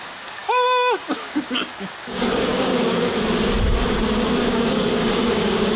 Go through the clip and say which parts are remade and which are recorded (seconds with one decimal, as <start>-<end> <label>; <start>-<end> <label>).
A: 0.0-2.7 remade; 2.7-4.5 recorded; 4.5-5.8 remade